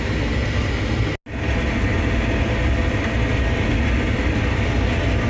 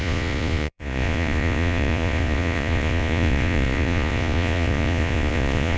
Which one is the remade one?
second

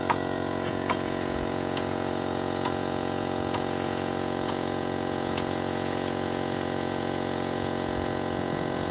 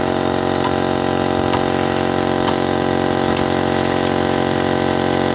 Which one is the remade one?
first